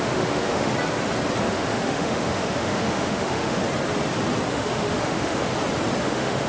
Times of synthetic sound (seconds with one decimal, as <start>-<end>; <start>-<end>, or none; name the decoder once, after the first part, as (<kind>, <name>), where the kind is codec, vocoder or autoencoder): 0.0-0.7 (autoencoder, DAC-VAE); 1.4-3.6; 4.5-5.5; 6.0-6.5